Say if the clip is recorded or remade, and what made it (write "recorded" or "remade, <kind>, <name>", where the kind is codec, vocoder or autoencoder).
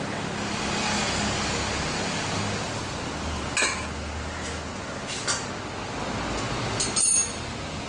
recorded